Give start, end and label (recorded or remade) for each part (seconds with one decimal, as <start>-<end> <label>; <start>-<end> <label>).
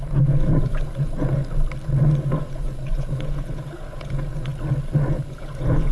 0.0-1.4 remade; 1.4-2.4 recorded; 2.4-4.5 remade; 4.5-5.1 recorded; 5.1-5.9 remade